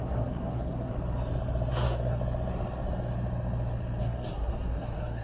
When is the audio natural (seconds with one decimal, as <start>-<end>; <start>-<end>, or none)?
0.9-1.7; 2.2-4.0

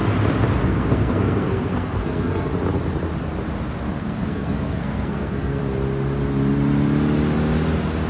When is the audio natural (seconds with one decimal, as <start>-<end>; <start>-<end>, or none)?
0.0-0.6; 2.5-4.0; 5.6-8.1

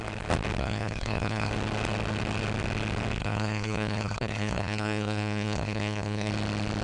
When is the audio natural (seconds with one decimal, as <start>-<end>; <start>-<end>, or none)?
0.0-0.6; 1.5-3.2; 6.3-6.8

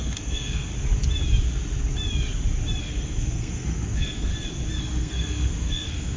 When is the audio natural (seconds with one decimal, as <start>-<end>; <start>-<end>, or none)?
0.7-2.8; 4.3-4.8

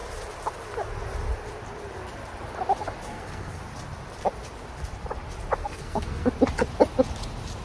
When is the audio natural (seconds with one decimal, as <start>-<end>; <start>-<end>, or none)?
0.0-3.1; 3.6-5.6; 6.3-7.6